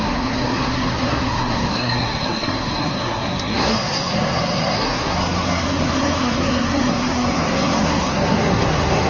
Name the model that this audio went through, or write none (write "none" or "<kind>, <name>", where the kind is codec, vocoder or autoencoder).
codec, SNAC